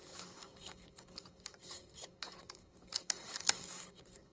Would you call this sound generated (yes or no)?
yes